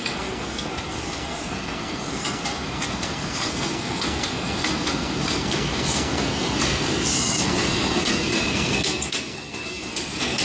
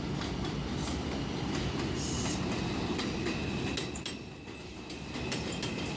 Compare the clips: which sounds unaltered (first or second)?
second